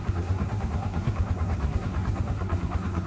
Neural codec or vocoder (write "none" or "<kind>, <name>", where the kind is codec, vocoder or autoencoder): codec, SNAC